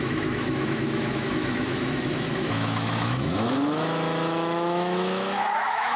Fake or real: fake